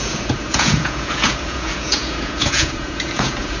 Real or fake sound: fake